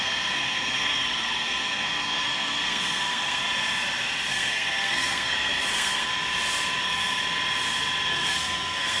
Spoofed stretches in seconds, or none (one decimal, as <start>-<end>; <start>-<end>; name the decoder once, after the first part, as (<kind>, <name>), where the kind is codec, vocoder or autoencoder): 0.0-3.4 (codec, SNAC); 4.3-6.1; 6.8-7.2; 8.1-9.0